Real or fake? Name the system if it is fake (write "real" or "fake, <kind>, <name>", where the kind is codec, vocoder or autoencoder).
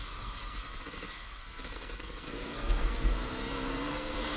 fake, codec, SNAC